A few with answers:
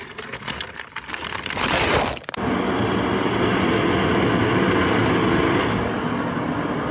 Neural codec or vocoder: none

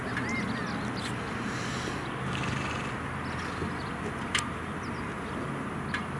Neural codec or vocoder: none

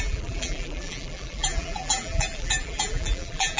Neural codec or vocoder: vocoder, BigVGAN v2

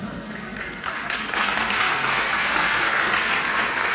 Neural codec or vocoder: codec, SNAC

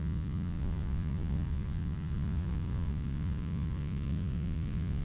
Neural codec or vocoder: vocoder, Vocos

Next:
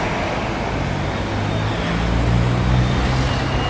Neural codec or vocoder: none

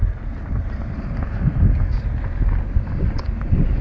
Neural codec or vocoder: none